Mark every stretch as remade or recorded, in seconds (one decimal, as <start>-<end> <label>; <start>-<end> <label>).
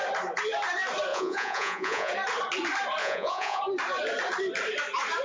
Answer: 0.0-1.1 recorded; 1.1-2.1 remade; 2.1-3.0 recorded; 3.0-3.6 remade; 3.6-5.2 recorded